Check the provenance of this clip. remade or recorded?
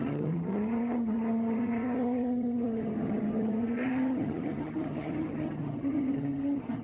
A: remade